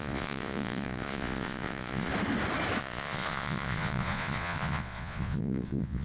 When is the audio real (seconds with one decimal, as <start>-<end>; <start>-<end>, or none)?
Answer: 2.1-2.8